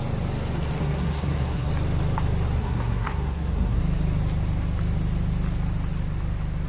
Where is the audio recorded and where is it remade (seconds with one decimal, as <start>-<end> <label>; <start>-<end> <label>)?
0.0-0.8 recorded; 0.8-1.7 remade; 1.7-2.6 recorded; 2.6-3.8 remade; 3.8-6.7 recorded